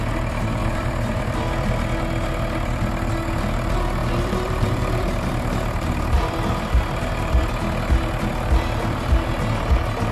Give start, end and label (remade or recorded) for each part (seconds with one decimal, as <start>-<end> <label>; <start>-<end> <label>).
0.0-0.6 recorded; 0.6-2.3 remade; 2.3-4.0 recorded; 4.0-7.5 remade; 7.5-8.3 recorded; 8.3-9.3 remade; 9.3-10.1 recorded